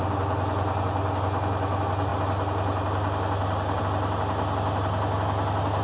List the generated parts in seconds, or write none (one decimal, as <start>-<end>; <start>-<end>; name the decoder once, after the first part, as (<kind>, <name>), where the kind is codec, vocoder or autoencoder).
none